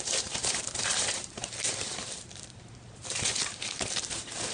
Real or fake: fake